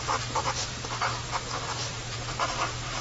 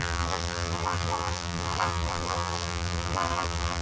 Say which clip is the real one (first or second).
first